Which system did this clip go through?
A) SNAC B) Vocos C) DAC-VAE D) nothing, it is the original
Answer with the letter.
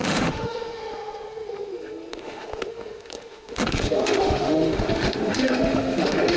C